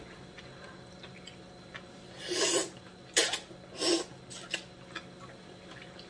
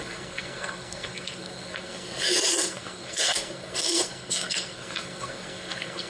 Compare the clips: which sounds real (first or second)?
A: first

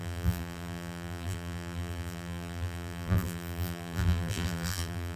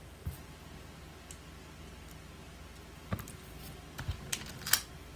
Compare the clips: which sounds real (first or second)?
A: second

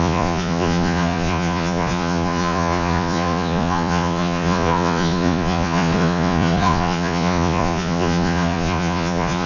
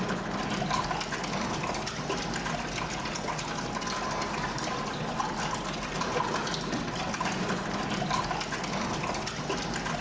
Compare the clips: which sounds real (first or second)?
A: second